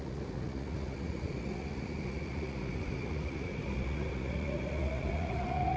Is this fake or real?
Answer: fake